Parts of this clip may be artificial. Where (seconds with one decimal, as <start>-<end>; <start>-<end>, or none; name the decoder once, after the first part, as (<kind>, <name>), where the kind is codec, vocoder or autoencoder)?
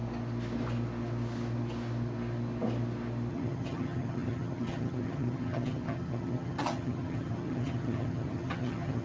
3.3-9.0 (vocoder, HiFi-GAN)